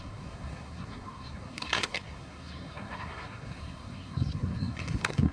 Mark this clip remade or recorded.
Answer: remade